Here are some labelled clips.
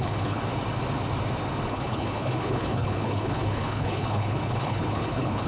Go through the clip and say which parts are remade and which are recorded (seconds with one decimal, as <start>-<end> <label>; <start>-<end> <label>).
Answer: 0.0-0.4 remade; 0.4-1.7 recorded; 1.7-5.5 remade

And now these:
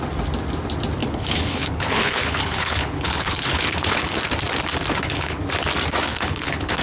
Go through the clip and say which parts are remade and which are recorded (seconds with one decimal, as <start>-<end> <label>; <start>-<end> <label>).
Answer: 0.0-1.0 recorded; 1.0-4.2 remade; 4.2-4.9 recorded; 4.9-5.4 remade; 5.4-6.1 recorded; 6.1-6.8 remade

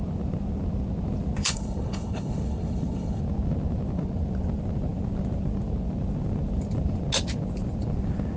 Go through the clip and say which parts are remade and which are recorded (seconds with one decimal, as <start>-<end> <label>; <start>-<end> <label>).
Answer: 0.0-1.4 recorded; 1.4-3.2 remade; 3.2-8.4 recorded

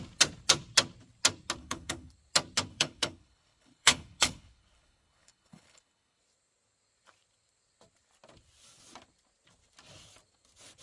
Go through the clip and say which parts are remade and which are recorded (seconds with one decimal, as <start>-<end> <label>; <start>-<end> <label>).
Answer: 0.0-1.6 recorded; 1.6-2.1 remade; 2.1-2.7 recorded; 2.7-6.2 remade; 6.2-10.8 recorded

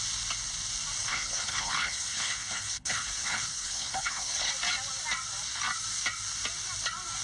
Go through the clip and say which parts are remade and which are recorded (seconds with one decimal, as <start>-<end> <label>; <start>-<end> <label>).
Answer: 0.0-1.0 recorded; 1.0-4.5 remade; 4.5-7.2 recorded

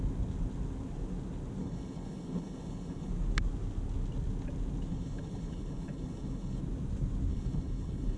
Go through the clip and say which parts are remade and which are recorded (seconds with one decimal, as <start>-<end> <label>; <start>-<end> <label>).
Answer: 0.0-1.6 recorded; 1.6-3.1 remade; 3.1-4.9 recorded; 4.9-6.6 remade; 6.6-7.3 recorded; 7.3-8.2 remade

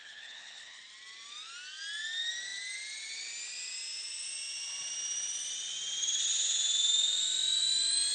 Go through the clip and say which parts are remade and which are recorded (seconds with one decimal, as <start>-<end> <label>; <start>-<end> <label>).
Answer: 0.0-0.8 remade; 0.8-8.1 recorded

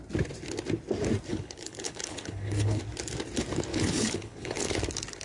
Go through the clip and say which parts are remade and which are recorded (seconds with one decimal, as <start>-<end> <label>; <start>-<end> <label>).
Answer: 0.0-1.3 recorded; 1.3-2.8 remade; 2.8-3.7 recorded; 3.7-4.7 remade; 4.7-5.2 recorded